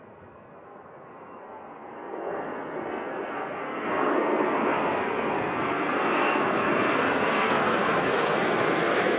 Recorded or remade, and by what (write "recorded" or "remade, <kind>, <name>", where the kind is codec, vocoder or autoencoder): remade, codec, SNAC